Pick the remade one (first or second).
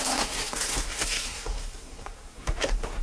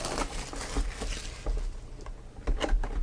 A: first